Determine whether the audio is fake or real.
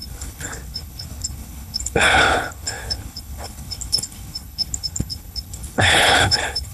fake